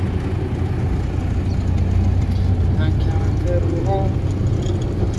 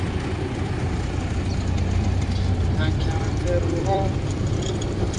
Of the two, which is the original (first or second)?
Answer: first